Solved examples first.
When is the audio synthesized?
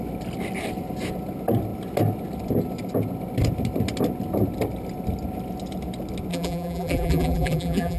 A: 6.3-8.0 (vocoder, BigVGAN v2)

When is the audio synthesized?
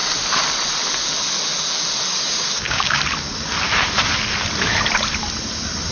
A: 2.1-3.0 (codec, DAC)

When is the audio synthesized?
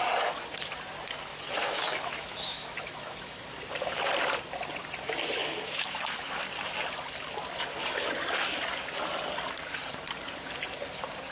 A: 1.3-3.4 (autoencoder, DAC-VAE); 5.4-6.4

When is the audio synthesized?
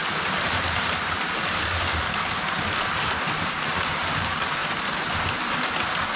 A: none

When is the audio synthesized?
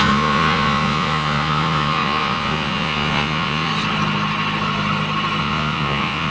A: 0.0-3.7 (vocoder, Vocos); 5.4-6.3